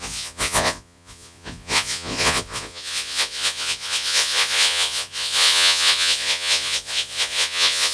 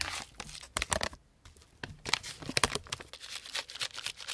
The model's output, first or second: first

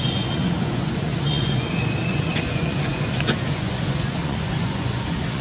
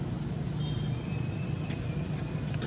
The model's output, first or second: first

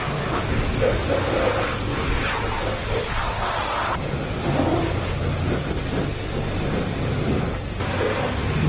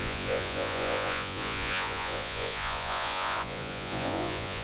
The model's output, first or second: second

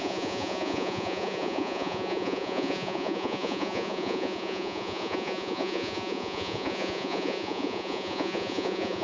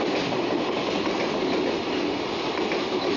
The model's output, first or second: first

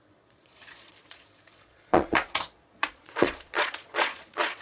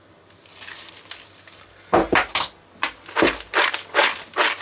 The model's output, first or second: first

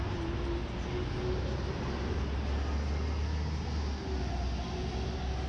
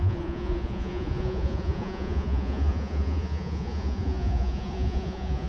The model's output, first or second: second